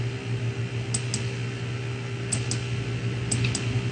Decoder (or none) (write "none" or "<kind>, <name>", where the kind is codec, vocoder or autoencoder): none